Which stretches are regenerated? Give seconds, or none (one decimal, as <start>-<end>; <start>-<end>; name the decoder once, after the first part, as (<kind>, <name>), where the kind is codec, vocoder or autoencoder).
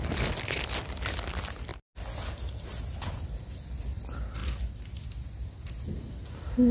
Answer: none